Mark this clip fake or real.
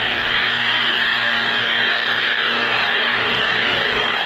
fake